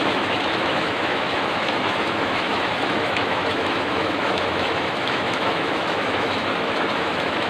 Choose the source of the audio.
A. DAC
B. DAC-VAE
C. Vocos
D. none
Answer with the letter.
B